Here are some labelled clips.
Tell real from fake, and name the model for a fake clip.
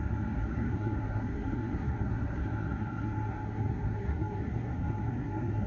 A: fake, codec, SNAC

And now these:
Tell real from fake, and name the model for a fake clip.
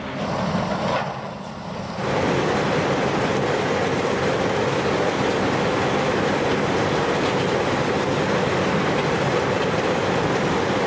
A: real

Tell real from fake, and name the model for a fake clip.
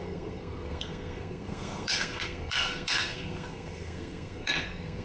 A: fake, codec, SNAC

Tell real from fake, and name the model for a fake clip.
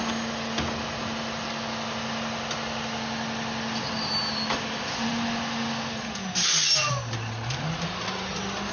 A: real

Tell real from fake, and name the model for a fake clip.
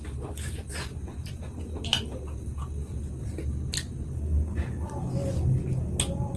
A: real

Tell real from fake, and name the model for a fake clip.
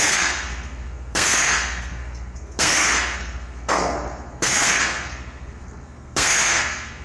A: fake, codec, SNAC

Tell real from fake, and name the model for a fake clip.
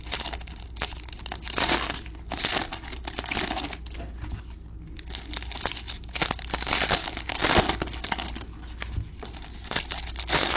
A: real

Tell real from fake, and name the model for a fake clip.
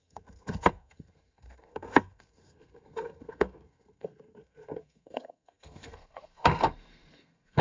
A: fake, codec, SNAC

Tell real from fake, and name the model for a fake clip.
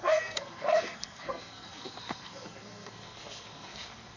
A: fake, codec, SNAC